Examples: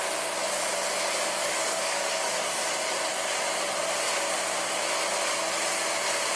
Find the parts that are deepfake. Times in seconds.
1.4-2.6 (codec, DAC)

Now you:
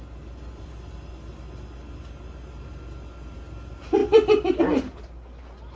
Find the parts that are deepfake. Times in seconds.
0.5-1.1 (vocoder, BigVGAN v2); 4.0-4.6